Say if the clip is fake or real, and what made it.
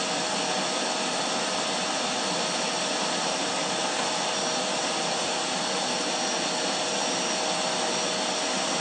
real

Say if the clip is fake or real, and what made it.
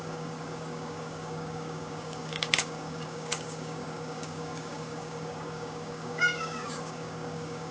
fake, codec, DAC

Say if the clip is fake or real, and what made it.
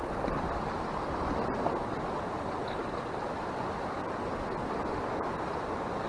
real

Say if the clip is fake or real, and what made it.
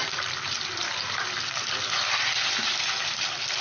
real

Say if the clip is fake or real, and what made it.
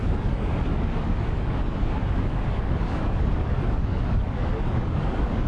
fake, codec, DAC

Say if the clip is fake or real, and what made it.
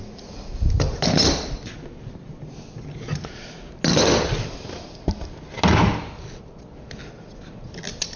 real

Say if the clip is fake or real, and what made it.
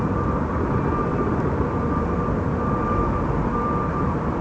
real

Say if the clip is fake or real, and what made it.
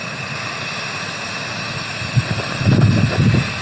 real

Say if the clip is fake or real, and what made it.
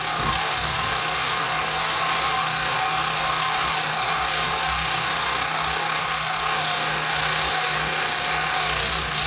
fake, codec, DAC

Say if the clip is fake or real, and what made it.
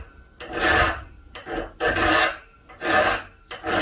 real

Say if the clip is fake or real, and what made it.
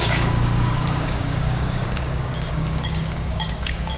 fake, codec, DAC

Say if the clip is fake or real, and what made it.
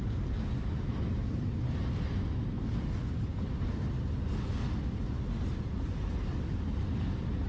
real